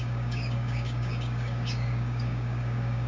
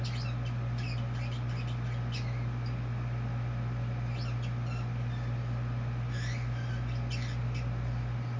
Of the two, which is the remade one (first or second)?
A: first